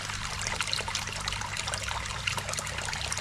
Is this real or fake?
real